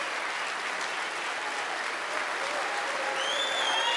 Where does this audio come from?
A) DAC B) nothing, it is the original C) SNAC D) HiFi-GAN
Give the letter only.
B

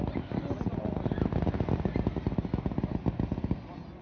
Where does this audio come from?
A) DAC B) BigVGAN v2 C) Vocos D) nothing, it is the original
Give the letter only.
D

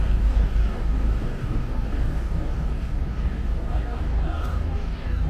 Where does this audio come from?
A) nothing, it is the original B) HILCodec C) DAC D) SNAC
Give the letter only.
C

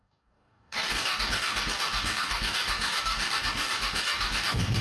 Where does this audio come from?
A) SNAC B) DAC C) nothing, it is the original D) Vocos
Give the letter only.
B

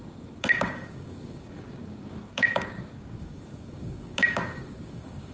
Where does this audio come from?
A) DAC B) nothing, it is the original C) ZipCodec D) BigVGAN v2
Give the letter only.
A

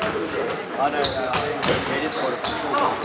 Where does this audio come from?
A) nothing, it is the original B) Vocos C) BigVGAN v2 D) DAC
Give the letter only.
A